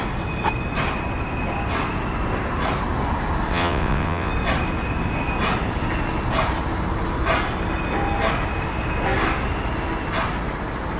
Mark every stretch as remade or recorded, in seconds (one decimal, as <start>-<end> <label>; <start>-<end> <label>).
0.0-3.5 recorded; 3.5-4.3 remade; 4.3-11.0 recorded